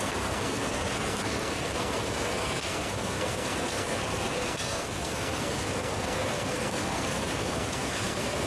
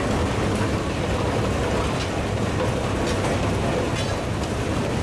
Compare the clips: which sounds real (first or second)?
second